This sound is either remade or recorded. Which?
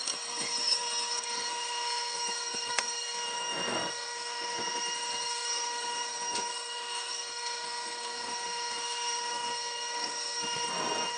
remade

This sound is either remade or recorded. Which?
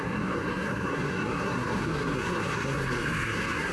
remade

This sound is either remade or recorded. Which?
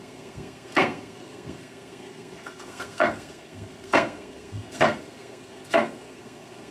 remade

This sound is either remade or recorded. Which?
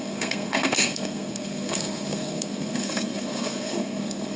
remade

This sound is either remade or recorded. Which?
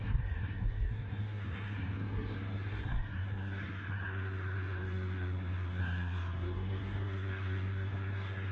remade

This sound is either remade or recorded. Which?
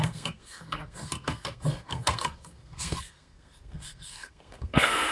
remade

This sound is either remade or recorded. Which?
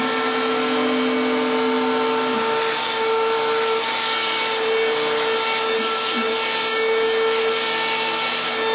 recorded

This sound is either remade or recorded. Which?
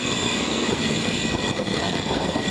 remade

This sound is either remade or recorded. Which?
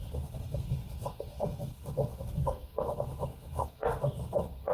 remade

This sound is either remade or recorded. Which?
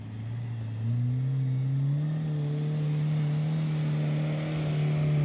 recorded